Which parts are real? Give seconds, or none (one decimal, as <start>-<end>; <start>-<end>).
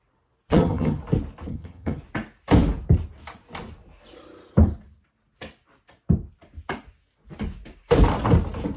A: 0.0-0.5; 1.0-1.5; 2.0-8.8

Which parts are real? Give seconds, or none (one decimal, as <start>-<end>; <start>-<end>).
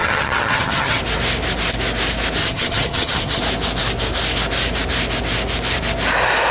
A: 1.0-2.4; 3.4-6.5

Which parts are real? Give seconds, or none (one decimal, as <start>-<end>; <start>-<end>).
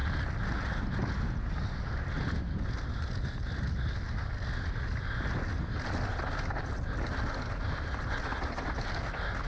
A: 0.0-9.5